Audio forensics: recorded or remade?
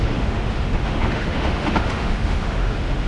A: remade